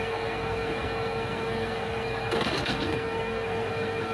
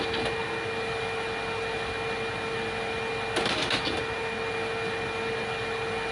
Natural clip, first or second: second